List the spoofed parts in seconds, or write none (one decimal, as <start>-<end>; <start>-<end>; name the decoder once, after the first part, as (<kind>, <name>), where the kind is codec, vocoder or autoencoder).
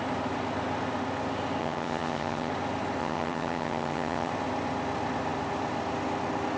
1.6-2.5 (vocoder, HiFi-GAN); 3.0-4.3